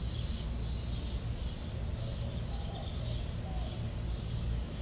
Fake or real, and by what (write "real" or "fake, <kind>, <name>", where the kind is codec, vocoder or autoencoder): real